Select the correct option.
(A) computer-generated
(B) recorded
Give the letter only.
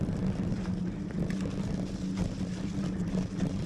B